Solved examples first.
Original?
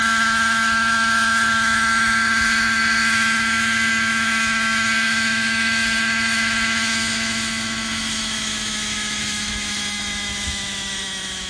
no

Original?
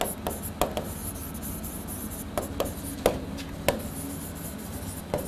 yes